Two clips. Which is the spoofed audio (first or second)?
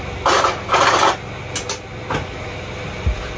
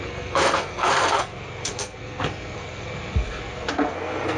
second